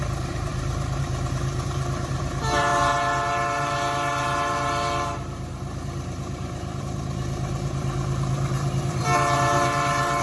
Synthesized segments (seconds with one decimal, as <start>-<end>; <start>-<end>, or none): 0.0-10.2